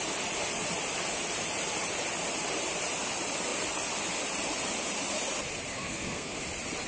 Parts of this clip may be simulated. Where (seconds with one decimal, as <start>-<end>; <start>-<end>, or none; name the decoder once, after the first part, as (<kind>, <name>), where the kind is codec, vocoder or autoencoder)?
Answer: 5.7-6.4 (codec, SNAC)